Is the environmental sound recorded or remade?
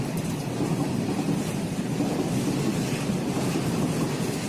recorded